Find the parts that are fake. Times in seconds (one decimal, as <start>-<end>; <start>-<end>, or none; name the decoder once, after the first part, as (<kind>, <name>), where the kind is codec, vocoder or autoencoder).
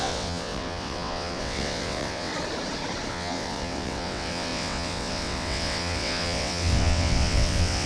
0.0-2.3 (vocoder, WaveNeXt); 3.1-7.9